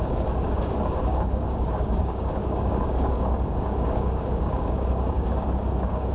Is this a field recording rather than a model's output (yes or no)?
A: no